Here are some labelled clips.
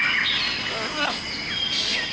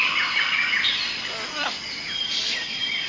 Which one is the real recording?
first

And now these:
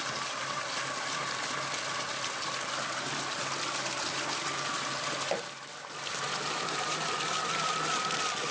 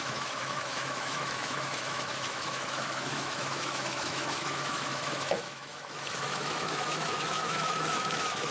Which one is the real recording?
first